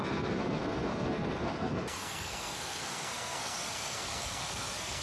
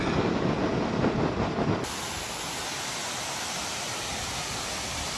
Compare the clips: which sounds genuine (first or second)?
second